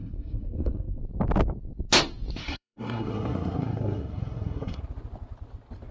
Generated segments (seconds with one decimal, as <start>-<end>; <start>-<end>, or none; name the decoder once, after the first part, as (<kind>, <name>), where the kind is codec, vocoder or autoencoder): 0.0-1.0 (codec, SNAC); 2.4-4.8